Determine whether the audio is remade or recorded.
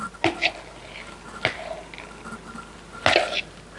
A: recorded